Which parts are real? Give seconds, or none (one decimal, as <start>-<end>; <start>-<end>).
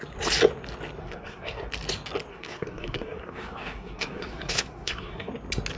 0.0-1.0; 1.7-2.3; 5.3-5.8